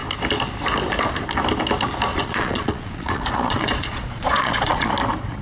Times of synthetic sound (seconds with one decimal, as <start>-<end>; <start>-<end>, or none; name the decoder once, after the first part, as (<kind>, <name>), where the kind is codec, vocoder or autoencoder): 2.1-4.9 (vocoder, Vocos)